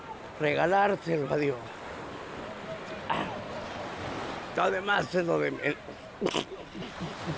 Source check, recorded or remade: recorded